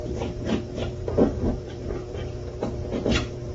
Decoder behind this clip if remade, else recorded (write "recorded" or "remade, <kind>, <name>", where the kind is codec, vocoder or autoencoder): remade, vocoder, BigVGAN v2